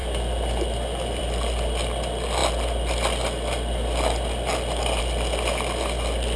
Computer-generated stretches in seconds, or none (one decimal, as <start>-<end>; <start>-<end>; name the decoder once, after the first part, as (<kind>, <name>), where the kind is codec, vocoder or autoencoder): none